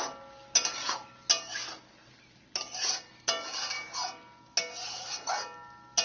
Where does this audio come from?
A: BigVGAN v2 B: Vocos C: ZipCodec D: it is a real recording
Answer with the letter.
D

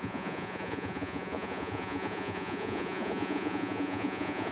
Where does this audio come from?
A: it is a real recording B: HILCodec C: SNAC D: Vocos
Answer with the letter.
D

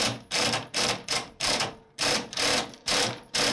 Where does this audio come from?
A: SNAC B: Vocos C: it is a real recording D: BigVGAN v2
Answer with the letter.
D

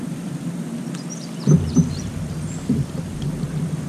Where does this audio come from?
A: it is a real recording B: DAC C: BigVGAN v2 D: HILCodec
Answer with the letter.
C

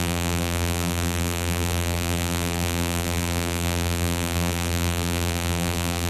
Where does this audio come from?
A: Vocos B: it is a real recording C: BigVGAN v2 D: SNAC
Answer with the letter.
C